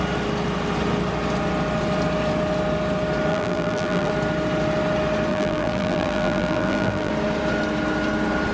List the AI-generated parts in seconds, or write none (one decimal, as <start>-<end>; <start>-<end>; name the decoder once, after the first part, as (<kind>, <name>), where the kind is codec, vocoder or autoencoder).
3.3-4.1 (vocoder, BigVGAN v2); 5.3-7.1